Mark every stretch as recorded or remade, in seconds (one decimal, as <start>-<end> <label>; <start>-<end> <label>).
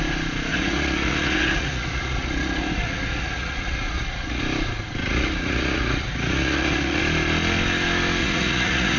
0.0-0.5 recorded; 0.5-4.4 remade; 4.4-5.0 recorded; 5.0-7.0 remade; 7.0-8.2 recorded; 8.2-9.0 remade